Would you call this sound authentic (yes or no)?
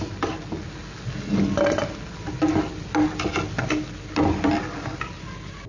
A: yes